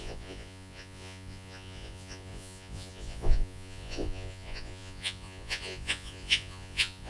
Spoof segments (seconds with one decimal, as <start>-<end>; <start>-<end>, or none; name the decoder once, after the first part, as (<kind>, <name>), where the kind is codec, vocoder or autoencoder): 0.0-7.1 (vocoder, Vocos)